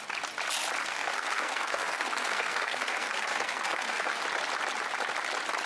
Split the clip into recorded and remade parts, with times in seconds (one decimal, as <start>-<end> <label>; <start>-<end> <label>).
0.0-0.8 recorded; 0.8-4.2 remade; 4.2-5.7 recorded